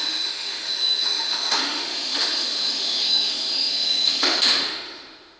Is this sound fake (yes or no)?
yes